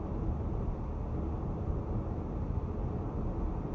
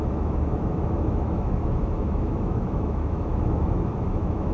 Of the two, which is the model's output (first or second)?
second